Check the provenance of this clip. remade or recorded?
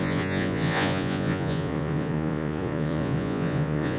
remade